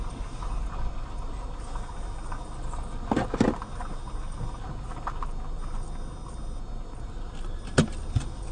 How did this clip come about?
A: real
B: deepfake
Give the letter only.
A